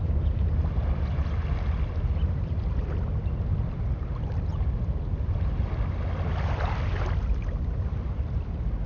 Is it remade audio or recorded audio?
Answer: recorded